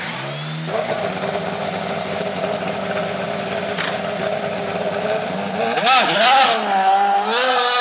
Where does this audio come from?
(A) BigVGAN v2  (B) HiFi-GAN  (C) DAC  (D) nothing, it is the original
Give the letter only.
D